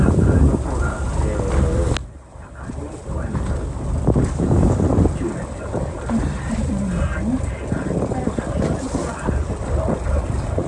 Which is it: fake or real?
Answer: real